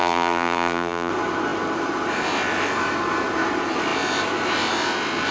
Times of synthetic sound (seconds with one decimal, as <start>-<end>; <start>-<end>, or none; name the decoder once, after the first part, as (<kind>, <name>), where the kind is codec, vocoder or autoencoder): 0.0-1.1 (vocoder, BigVGAN v2)

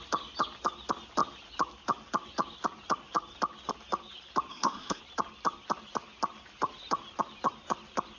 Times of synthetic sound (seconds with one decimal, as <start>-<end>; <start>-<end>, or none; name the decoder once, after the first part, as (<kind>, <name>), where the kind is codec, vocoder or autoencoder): 4.5-5.0 (codec, SNAC)

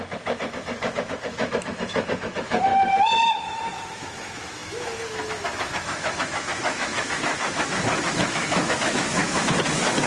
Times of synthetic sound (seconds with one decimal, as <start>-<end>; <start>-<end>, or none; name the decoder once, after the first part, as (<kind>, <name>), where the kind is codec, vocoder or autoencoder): 0.0-2.7 (autoencoder, DAC-VAE); 3.2-10.1

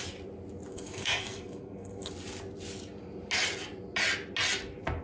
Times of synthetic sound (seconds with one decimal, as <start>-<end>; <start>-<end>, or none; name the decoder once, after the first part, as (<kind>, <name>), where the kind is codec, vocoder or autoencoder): 0.7-2.1 (codec, SNAC)